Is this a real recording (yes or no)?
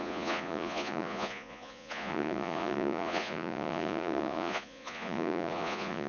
no